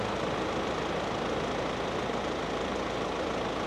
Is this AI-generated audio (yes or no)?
no